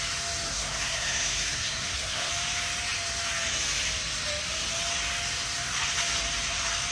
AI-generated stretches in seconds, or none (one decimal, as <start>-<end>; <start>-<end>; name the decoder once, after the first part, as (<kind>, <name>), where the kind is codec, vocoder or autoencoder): 0.5-2.3 (codec, SNAC)